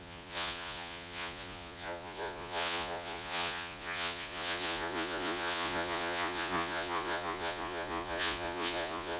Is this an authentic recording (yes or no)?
no